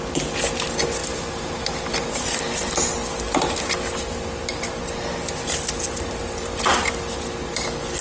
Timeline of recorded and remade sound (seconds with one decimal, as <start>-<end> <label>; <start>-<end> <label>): 0.0-1.0 recorded; 1.0-2.4 remade; 2.4-8.0 recorded